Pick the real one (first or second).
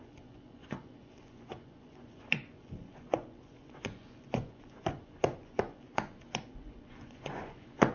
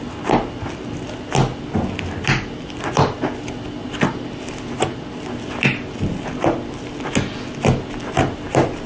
second